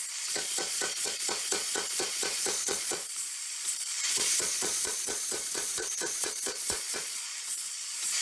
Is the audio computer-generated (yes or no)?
yes